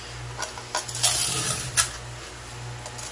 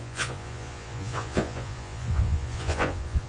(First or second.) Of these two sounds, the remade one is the second